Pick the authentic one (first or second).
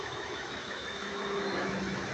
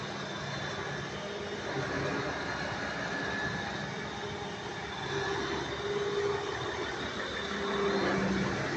second